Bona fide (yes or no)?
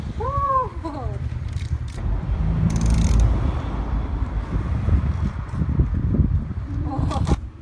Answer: no